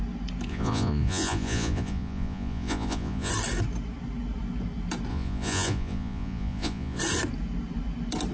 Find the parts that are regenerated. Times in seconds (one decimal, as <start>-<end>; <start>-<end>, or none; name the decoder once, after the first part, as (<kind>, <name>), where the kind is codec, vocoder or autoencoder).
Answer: 0.5-3.3 (vocoder, Vocos); 5.1-7.0